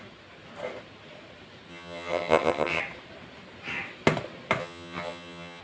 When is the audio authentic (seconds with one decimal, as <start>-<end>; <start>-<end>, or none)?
0.0-1.7; 2.8-4.6